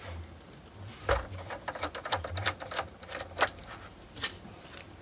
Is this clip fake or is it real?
real